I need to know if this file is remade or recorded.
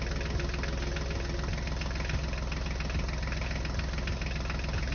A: recorded